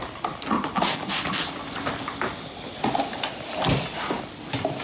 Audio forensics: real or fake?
real